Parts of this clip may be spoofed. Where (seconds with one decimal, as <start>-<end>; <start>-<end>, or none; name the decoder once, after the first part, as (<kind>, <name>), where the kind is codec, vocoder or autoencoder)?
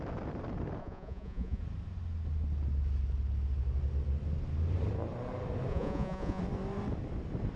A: 0.8-1.6 (vocoder, Vocos); 5.7-6.4